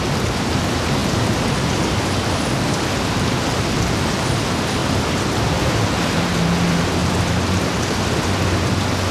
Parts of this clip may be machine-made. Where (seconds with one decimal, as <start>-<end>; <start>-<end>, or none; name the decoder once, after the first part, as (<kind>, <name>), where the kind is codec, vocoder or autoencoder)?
7.0-8.7 (vocoder, BigVGAN v2)